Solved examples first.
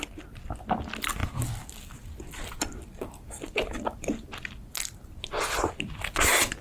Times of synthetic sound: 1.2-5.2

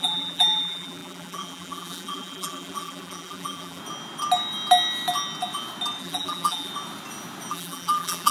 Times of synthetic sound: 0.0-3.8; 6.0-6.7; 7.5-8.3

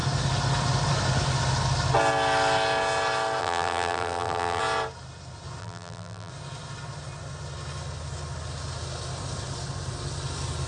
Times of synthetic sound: 3.4-4.6; 5.6-6.3

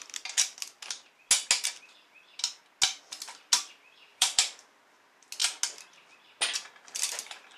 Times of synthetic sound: 4.1-4.8